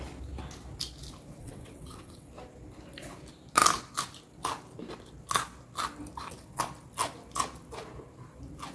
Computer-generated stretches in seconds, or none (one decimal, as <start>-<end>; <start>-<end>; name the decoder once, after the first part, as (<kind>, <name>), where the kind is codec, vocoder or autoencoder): 1.4-2.3 (vocoder, WaveNeXt)